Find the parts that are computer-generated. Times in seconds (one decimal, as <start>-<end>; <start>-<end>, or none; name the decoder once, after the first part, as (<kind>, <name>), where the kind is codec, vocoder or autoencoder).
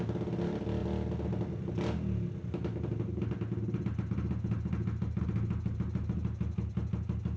none